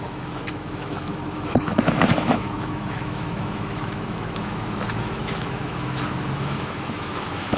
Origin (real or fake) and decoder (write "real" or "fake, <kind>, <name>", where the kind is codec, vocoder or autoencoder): fake, autoencoder, DAC-VAE